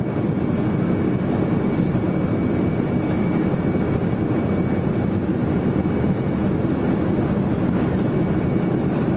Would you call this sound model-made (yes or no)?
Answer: no